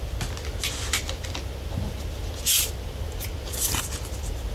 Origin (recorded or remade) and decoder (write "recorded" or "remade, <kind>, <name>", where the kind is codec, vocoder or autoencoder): recorded